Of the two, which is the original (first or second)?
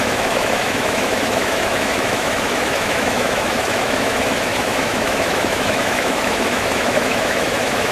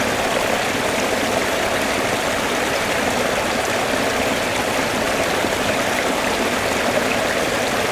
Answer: second